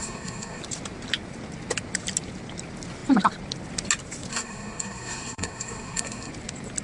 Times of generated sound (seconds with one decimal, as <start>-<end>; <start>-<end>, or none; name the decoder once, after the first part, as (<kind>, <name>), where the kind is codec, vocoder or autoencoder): 0.0-0.6 (codec, SNAC); 4.3-6.3